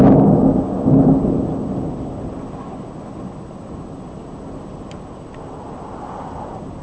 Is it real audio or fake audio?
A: real